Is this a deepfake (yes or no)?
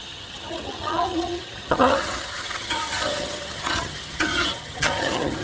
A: yes